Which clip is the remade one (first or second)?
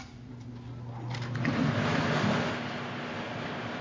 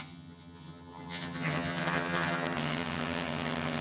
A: second